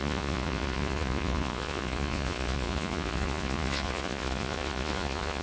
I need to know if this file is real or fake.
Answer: fake